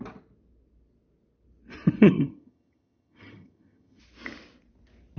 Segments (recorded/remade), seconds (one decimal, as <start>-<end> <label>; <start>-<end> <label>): 0.0-2.0 recorded; 2.0-4.0 remade; 4.0-5.2 recorded